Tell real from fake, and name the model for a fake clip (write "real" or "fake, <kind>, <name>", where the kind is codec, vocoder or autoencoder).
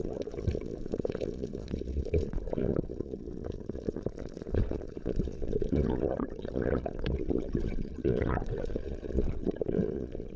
fake, vocoder, Vocos